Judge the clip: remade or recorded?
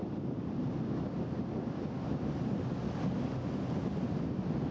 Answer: recorded